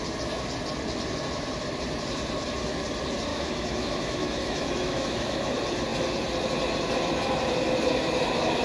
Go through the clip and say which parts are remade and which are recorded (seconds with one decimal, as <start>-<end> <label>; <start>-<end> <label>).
0.0-3.3 recorded; 3.3-5.5 remade; 5.5-8.6 recorded